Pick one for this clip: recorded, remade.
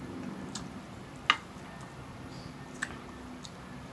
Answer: recorded